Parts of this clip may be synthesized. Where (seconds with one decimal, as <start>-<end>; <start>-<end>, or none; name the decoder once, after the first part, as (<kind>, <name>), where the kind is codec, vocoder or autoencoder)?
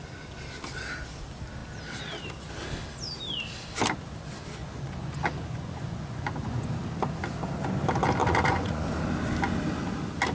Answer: 4.6-6.7 (vocoder, Vocos); 8.2-8.9